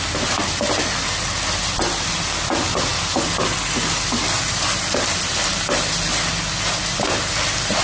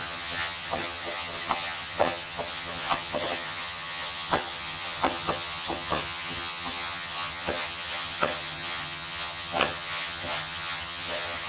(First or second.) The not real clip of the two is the second